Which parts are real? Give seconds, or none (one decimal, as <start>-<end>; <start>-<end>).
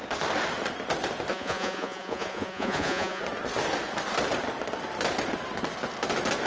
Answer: 0.0-1.3; 3.2-6.5